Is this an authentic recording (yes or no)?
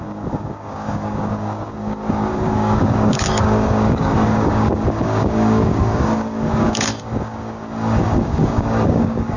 no